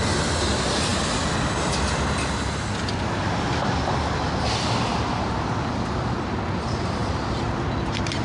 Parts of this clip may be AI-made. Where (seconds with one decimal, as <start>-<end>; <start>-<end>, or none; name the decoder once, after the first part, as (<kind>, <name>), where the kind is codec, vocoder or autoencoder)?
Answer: none